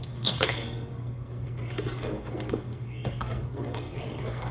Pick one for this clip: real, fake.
fake